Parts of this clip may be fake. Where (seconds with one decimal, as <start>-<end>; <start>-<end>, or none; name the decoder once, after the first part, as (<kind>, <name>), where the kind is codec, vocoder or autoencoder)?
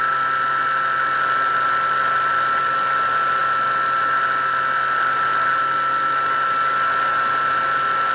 none